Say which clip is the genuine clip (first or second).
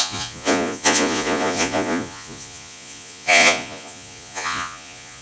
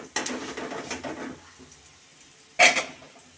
second